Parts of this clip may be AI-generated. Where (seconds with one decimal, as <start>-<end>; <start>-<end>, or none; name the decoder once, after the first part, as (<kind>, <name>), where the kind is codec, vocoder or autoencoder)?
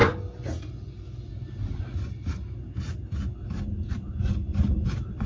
4.5-5.3 (vocoder, BigVGAN v2)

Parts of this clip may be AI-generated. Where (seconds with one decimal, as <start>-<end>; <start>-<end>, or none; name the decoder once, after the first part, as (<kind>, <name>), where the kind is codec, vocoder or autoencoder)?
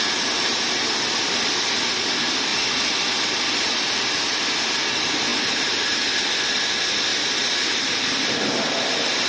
2.5-3.4 (vocoder, BigVGAN v2); 5.3-6.0; 7.1-8.3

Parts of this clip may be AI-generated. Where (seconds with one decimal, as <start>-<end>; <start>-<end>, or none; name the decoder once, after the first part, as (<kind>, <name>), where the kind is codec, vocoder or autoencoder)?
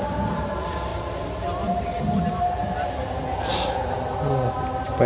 0.9-2.0 (vocoder, BigVGAN v2)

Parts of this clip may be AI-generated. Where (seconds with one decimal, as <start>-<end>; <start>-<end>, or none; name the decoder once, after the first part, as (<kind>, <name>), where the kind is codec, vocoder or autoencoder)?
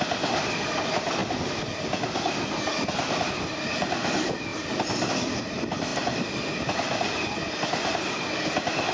0.0-1.2 (vocoder, BigVGAN v2); 3.3-4.5; 5.1-8.9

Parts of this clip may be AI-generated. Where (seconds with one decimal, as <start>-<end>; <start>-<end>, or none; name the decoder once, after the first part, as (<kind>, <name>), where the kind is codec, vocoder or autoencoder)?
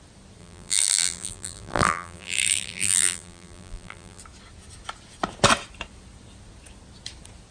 0.4-4.2 (vocoder, BigVGAN v2)